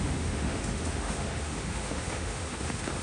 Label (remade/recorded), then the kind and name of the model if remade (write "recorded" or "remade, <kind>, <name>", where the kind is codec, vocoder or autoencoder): remade, autoencoder, DAC-VAE